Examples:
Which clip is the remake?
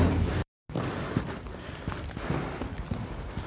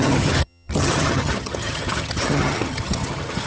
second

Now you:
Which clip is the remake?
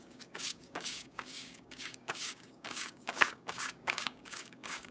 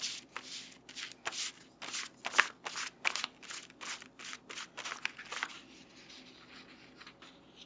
first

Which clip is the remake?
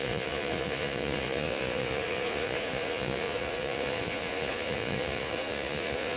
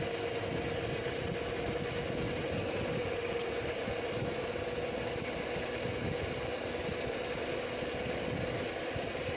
first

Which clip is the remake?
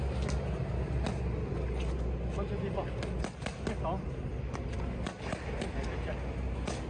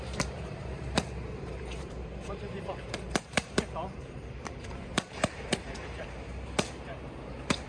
second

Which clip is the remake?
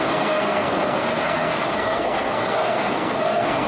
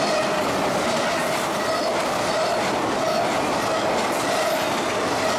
first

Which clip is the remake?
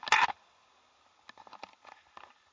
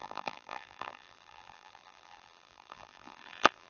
second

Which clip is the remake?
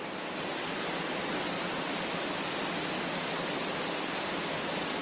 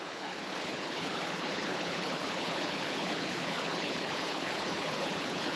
second